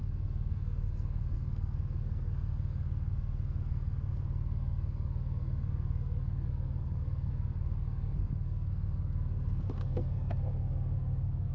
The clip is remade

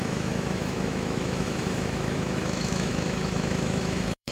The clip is remade